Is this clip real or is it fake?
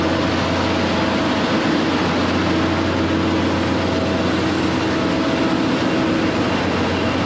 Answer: real